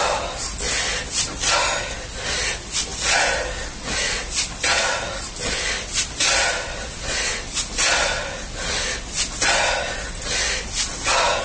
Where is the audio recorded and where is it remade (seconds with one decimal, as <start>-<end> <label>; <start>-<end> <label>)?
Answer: 0.0-11.4 recorded